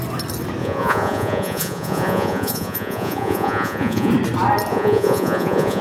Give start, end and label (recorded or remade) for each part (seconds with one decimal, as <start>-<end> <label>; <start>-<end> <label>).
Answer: 0.0-0.6 recorded; 0.6-4.1 remade; 4.1-4.7 recorded; 4.7-5.8 remade